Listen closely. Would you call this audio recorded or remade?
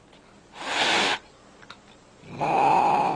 recorded